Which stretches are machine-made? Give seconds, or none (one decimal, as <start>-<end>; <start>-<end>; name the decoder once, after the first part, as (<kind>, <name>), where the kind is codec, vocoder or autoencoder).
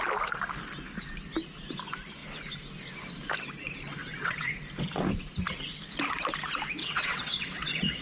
4.0-4.6 (vocoder, WaveNeXt); 6.8-8.0